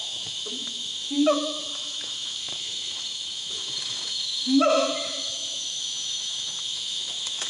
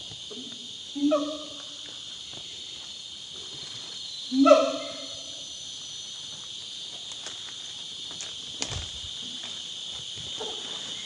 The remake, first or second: first